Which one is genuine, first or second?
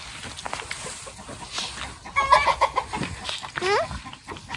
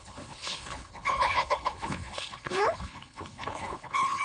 first